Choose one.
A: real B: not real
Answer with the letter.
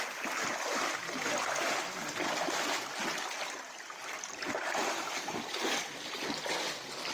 A